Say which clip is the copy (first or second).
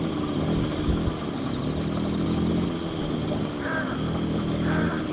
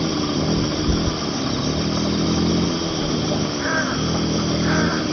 second